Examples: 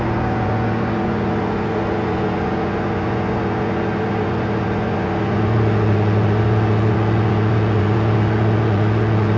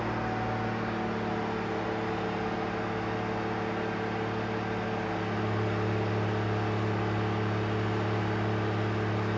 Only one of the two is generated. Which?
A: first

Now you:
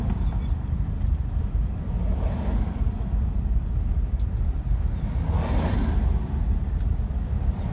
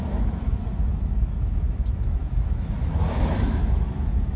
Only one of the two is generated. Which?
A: second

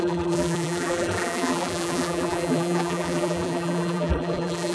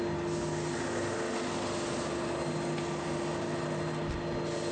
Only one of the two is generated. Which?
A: first